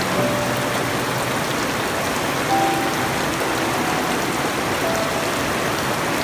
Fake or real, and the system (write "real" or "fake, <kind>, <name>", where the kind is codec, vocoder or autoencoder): real